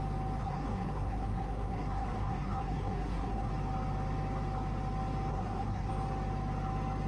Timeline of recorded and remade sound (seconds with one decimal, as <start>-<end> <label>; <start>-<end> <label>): 0.0-0.4 recorded; 0.4-3.5 remade; 3.5-5.3 recorded; 5.3-5.9 remade; 5.9-7.1 recorded